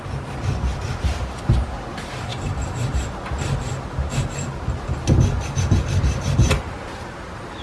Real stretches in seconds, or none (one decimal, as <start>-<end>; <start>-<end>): 0.0-7.6